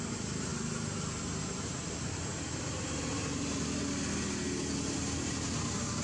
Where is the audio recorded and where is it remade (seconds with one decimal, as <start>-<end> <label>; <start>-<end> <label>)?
0.0-6.0 recorded